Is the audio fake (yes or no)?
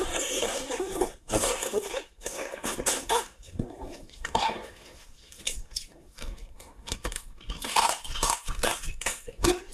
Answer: yes